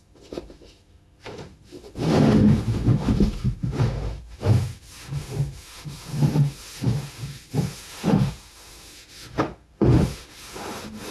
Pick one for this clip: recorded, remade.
remade